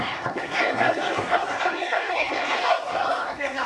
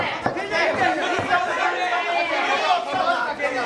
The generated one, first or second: first